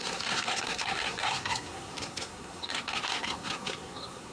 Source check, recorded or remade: remade